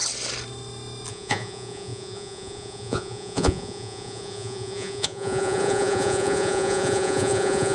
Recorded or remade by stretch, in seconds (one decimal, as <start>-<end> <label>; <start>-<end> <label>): 0.0-1.1 recorded; 1.1-7.7 remade